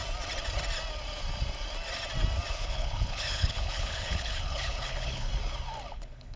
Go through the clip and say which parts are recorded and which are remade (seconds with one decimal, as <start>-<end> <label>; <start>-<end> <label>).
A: 0.0-2.5 recorded; 2.5-5.3 remade; 5.3-5.9 recorded; 5.9-6.4 remade